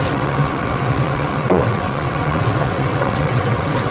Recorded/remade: remade